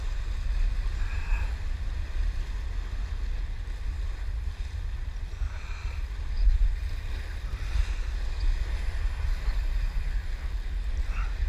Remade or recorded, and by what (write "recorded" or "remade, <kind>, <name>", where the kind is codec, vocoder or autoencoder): recorded